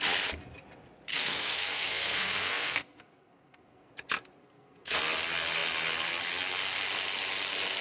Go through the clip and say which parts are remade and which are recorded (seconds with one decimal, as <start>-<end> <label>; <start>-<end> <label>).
0.0-1.1 recorded; 1.1-3.9 remade; 3.9-4.4 recorded; 4.4-5.0 remade; 5.0-7.8 recorded